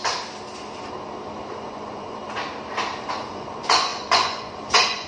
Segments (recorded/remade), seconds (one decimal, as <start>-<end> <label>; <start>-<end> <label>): 0.0-1.5 recorded; 1.5-2.2 remade; 2.2-3.1 recorded; 3.1-5.1 remade